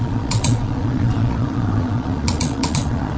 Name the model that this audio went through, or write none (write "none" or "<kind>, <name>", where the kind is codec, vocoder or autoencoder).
vocoder, Vocos